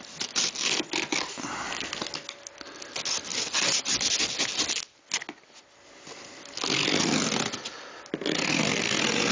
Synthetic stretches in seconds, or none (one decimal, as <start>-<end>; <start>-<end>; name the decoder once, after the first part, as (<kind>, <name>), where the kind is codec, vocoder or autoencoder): none